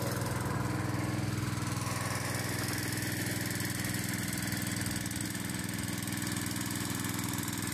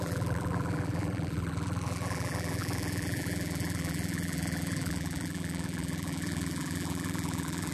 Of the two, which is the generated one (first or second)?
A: second